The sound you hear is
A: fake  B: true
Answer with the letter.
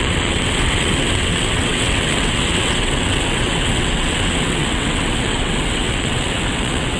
A